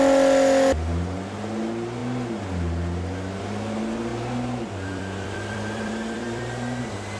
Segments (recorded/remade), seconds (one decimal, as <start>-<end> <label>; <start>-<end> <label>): 0.0-4.1 recorded; 4.1-6.8 remade; 6.8-7.2 recorded